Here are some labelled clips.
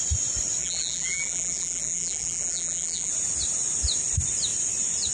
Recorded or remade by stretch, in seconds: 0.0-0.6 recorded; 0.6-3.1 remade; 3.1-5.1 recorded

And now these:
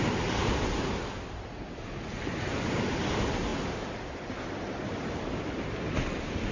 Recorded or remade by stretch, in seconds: 0.0-6.5 recorded

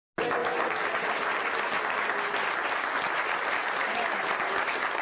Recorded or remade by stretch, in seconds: 0.0-5.0 recorded